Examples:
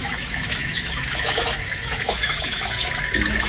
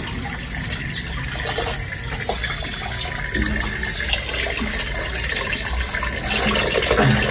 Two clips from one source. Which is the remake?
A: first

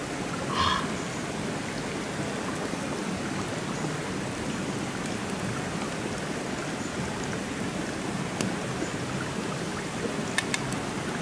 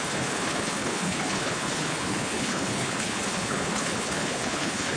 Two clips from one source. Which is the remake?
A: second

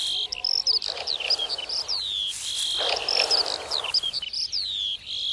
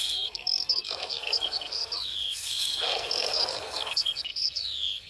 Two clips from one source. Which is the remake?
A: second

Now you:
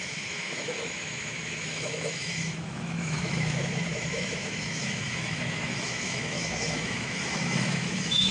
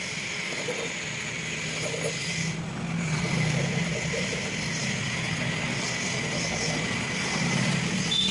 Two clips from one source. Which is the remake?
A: first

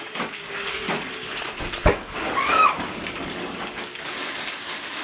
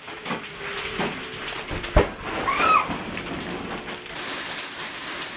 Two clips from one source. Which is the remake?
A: first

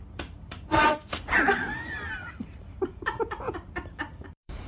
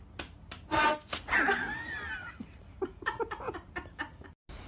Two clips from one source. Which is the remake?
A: first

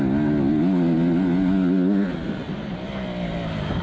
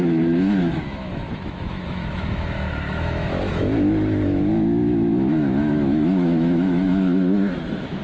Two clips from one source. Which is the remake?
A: second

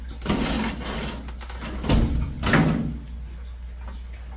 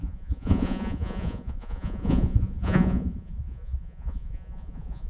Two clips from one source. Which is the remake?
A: second